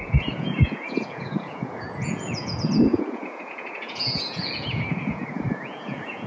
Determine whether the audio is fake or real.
fake